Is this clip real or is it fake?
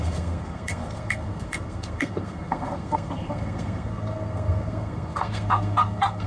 fake